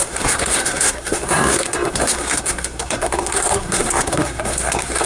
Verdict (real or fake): fake